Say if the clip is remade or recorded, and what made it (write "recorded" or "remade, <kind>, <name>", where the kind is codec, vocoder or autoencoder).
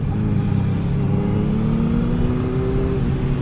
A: recorded